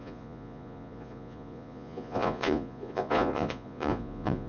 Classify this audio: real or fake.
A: fake